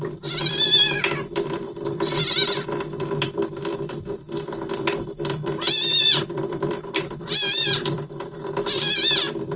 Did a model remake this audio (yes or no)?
yes